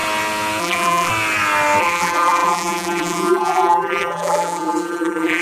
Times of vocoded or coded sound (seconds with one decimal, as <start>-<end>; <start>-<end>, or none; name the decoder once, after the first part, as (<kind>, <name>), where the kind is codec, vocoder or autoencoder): 0.6-1.1 (vocoder, BigVGAN v2); 1.8-5.4